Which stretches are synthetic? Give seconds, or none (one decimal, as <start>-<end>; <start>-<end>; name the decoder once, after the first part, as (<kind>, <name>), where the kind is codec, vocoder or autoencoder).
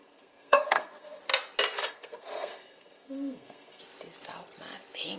0.0-1.2 (codec, SNAC); 1.8-3.8